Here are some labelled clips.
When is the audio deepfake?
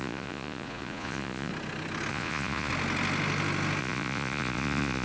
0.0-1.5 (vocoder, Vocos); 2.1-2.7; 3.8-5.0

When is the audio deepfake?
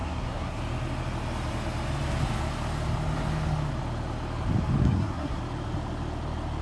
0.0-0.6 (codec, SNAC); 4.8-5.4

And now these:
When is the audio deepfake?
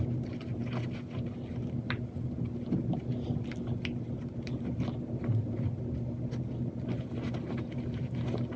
none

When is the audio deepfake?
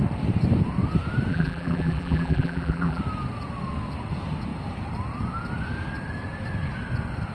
1.3-3.0 (vocoder, BigVGAN v2)